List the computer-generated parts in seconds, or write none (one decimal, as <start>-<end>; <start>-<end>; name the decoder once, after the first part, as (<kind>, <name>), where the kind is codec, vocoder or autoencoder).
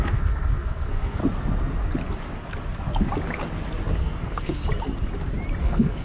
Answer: 0.0-1.2 (codec, SNAC); 4.0-4.6; 5.6-6.0